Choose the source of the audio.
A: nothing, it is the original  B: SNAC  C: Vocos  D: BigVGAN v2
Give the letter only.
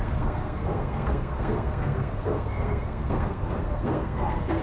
B